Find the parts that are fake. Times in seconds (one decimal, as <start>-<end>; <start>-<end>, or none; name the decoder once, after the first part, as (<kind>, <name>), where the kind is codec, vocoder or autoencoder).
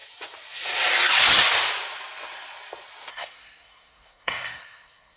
3.1-5.2 (codec, SNAC)